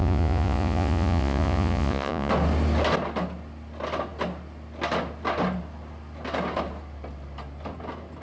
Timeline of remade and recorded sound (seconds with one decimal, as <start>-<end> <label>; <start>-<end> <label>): 0.0-2.3 remade; 2.3-8.2 recorded